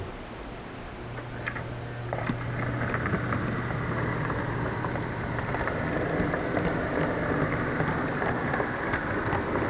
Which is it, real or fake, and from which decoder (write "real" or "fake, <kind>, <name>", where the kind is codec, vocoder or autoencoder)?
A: real